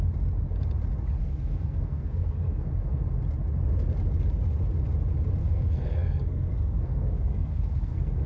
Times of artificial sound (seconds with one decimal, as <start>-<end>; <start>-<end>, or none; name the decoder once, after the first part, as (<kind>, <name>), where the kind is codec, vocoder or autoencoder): 1.2-3.0 (codec, SNAC); 5.4-8.3